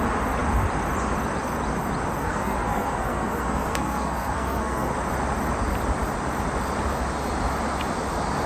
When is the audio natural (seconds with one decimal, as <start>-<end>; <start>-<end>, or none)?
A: 0.0-2.2; 4.9-8.5